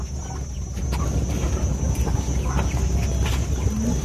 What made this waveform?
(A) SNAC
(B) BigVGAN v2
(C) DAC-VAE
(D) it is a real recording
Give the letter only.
D